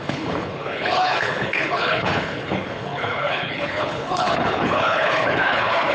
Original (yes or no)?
no